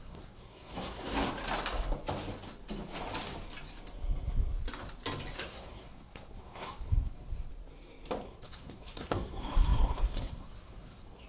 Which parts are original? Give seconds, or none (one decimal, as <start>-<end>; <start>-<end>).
1.3-5.4; 7.5-8.2

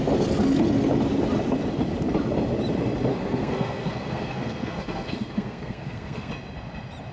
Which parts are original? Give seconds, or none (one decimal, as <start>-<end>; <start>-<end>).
0.0-3.1; 6.3-7.1